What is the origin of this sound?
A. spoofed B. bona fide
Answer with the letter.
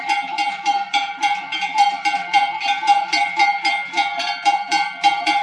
A